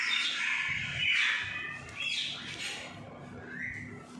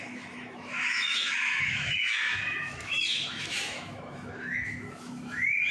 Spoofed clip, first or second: second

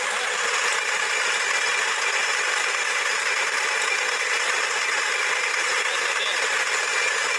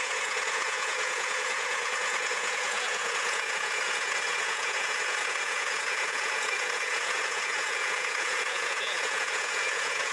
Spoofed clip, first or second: second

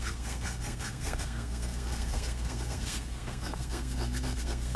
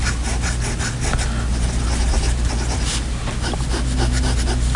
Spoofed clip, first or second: first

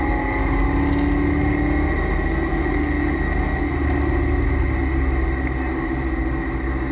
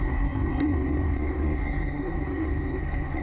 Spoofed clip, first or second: second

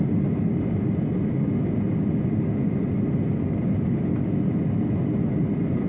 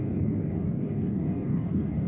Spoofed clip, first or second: second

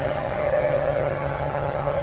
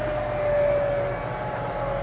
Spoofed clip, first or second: first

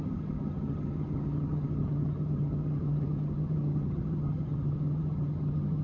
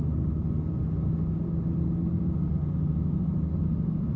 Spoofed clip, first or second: first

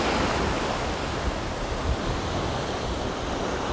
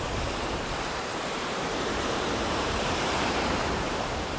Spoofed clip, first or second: second